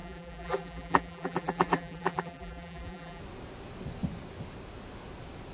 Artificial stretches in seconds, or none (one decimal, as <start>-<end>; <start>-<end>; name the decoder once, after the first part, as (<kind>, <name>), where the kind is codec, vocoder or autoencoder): 0.0-3.2 (vocoder, BigVGAN v2)